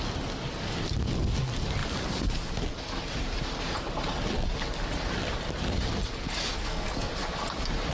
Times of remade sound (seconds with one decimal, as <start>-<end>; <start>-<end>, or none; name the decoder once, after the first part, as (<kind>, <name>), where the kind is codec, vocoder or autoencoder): 6.6-7.1 (codec, SNAC)

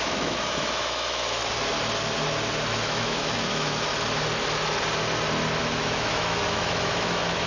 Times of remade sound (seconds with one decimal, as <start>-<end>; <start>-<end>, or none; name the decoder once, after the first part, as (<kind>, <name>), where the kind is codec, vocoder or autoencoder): 0.0-1.4 (autoencoder, DAC-VAE); 2.7-3.9; 5.6-7.5

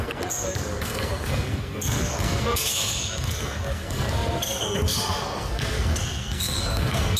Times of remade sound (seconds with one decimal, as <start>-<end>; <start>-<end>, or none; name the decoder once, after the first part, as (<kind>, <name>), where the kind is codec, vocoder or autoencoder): 0.0-7.2 (codec, SNAC)